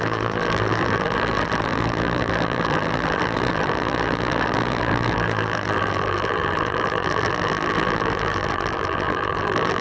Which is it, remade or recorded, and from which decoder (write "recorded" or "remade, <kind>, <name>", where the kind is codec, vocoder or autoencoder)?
remade, vocoder, BigVGAN v2